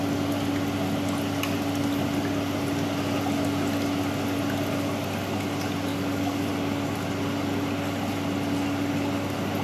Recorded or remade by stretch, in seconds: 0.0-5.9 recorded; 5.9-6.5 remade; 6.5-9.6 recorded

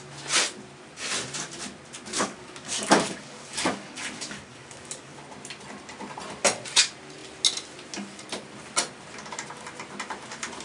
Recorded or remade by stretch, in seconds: 0.0-2.1 recorded; 2.1-5.2 remade; 5.2-10.6 recorded